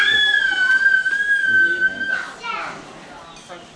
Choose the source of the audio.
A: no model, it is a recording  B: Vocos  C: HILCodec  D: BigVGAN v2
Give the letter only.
A